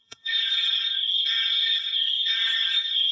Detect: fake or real fake